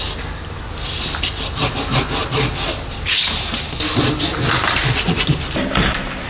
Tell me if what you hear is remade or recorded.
recorded